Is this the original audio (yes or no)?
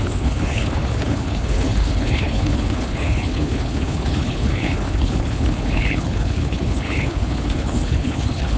no